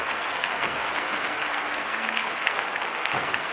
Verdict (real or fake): fake